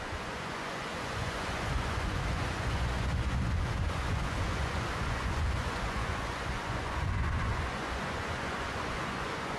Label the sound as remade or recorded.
remade